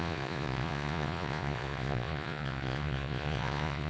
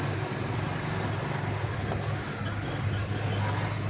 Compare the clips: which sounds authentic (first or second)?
second